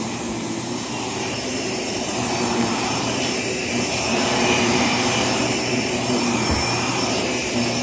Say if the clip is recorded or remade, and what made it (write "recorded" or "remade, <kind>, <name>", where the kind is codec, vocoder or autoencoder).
remade, vocoder, BigVGAN v2